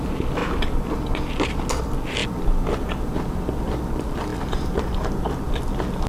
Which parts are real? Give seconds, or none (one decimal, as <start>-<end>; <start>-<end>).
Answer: 0.0-6.1